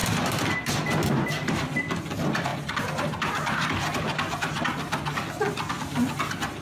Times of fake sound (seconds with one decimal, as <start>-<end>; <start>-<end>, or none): none